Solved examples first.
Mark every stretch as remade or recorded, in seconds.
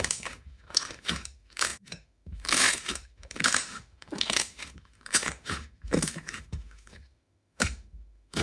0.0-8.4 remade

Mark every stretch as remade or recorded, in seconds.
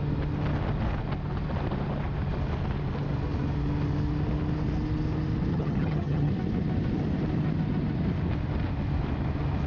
0.0-5.5 recorded; 5.5-6.3 remade; 6.3-9.7 recorded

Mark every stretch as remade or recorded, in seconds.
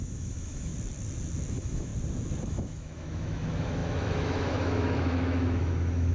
0.0-0.7 remade; 0.7-1.5 recorded; 1.5-1.9 remade; 1.9-2.4 recorded; 2.4-6.1 remade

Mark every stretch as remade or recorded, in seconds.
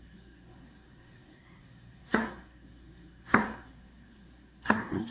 0.0-5.1 remade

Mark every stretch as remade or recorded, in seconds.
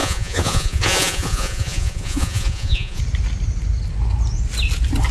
0.0-3.0 remade; 3.0-5.1 recorded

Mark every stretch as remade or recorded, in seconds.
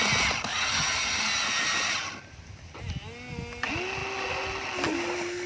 0.0-0.5 recorded; 0.5-1.2 remade; 1.2-5.5 recorded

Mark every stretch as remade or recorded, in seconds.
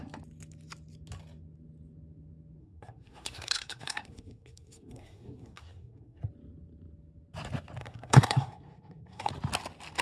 0.0-2.6 recorded; 2.6-6.2 remade; 6.2-7.8 recorded; 7.8-9.3 remade; 9.3-10.0 recorded